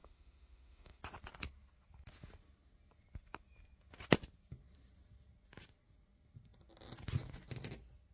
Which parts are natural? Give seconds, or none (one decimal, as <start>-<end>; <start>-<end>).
1.0-8.1